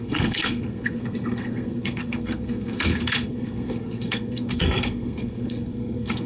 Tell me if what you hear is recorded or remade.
remade